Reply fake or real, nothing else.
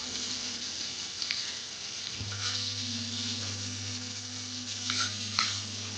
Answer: fake